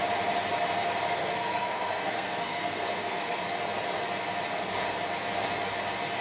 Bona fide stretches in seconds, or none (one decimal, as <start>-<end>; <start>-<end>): 0.0-1.2; 3.4-6.2